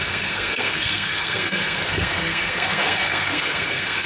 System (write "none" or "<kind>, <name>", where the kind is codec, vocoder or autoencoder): codec, SNAC